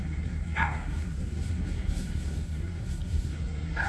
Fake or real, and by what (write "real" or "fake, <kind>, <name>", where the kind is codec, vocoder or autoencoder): fake, codec, SNAC